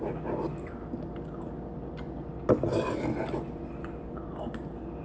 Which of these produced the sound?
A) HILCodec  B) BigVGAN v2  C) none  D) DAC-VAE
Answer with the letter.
C